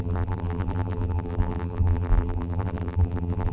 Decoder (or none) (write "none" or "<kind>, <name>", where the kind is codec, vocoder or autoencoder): vocoder, BigVGAN v2